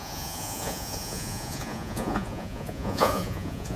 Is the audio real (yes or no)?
no